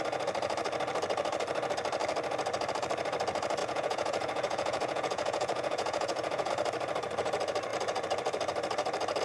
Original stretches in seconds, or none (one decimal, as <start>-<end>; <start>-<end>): 0.0-3.6; 6.5-9.2